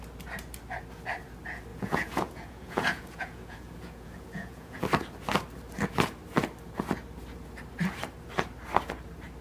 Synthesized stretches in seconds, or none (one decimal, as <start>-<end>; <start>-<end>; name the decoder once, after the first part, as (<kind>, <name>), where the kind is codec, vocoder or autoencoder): 1.7-4.8 (vocoder, Vocos)